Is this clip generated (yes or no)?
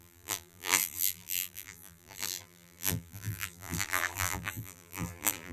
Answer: yes